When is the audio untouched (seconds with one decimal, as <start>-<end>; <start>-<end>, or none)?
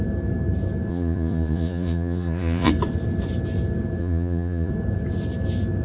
0.0-0.9; 2.7-4.0; 4.7-5.8